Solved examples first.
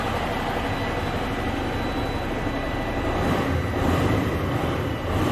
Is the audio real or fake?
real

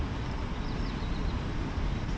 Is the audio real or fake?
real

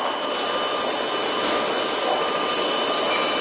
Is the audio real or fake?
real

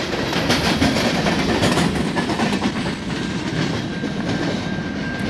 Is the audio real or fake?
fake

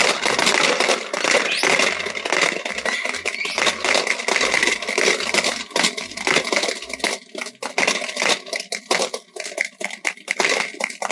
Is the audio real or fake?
real